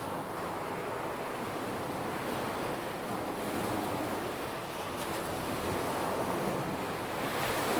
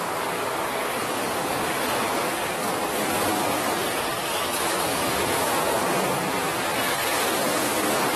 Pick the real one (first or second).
first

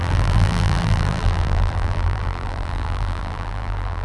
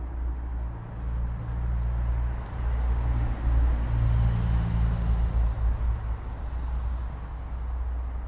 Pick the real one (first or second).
second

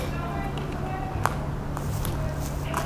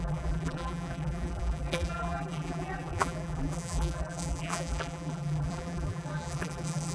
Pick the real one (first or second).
first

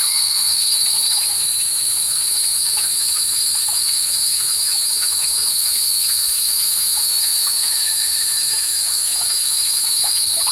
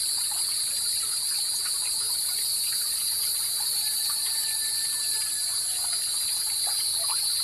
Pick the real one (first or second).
second